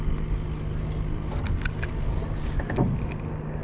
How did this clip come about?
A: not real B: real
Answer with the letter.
B